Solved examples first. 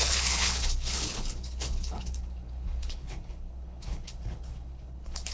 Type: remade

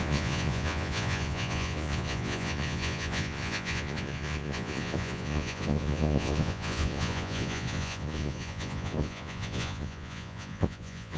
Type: remade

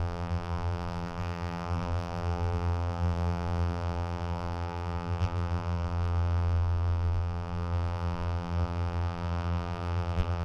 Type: remade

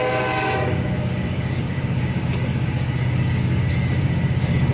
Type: remade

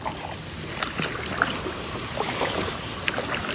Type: recorded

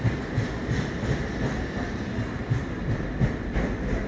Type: recorded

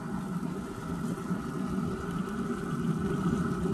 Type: recorded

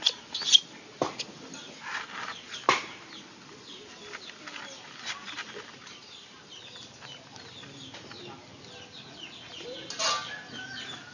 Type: recorded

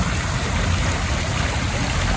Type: recorded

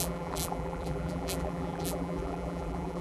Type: remade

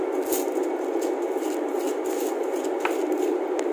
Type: recorded